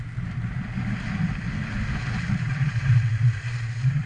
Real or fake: real